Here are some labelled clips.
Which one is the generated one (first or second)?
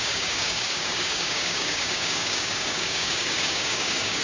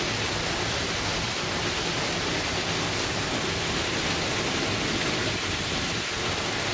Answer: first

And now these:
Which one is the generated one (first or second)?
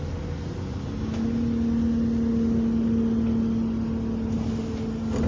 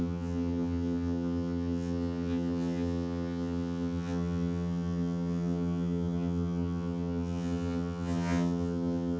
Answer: second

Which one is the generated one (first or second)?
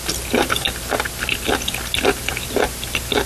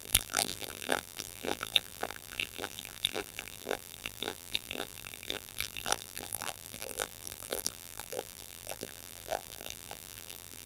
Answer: second